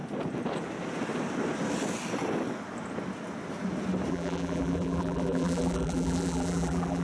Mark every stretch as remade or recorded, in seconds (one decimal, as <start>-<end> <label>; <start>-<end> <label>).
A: 0.0-4.1 recorded; 4.1-7.0 remade